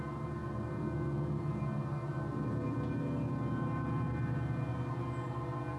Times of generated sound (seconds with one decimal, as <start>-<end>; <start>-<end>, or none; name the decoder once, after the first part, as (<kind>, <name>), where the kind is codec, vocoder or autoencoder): none